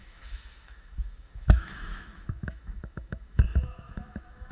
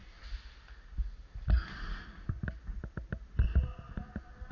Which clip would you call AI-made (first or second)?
first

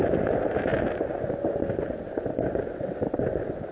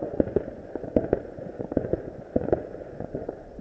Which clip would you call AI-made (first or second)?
second